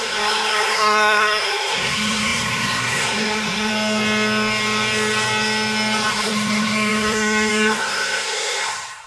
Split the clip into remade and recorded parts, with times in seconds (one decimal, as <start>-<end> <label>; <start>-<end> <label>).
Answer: 0.0-3.7 remade; 3.7-6.1 recorded; 6.1-9.1 remade